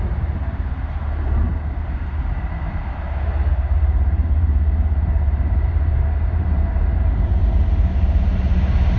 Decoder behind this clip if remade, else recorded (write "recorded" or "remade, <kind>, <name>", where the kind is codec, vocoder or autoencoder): remade, vocoder, BigVGAN v2